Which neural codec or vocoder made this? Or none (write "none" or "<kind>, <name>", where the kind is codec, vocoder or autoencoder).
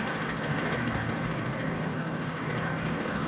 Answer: codec, DAC